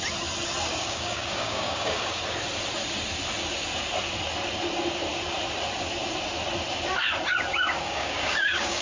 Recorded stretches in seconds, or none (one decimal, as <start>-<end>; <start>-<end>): 0.0-0.7; 2.2-7.5